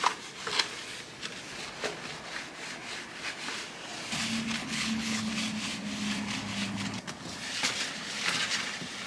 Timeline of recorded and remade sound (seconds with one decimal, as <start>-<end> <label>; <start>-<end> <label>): 0.0-4.6 recorded; 4.6-5.3 remade; 5.3-9.1 recorded